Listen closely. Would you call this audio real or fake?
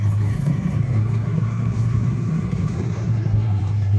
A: fake